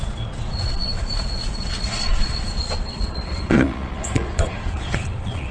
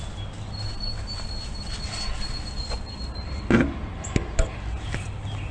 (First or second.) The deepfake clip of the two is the first